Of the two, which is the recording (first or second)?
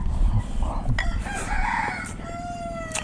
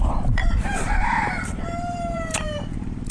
first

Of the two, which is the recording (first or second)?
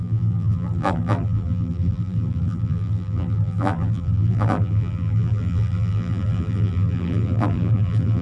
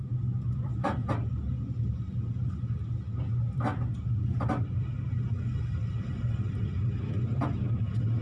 second